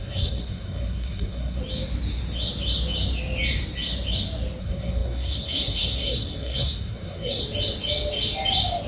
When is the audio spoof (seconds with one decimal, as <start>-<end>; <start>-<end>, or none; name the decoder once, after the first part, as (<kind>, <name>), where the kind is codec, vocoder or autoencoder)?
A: 0.0-1.6 (codec, SNAC); 4.6-7.4